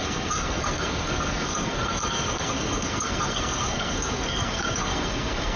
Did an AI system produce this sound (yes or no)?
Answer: yes